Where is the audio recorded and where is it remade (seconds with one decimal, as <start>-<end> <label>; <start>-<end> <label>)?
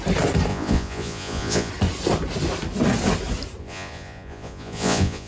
0.0-0.5 recorded; 0.5-1.7 remade; 1.7-3.6 recorded; 3.6-5.3 remade